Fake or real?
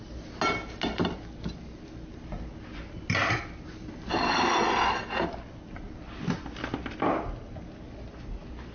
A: real